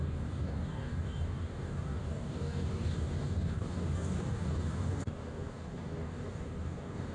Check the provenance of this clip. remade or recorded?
remade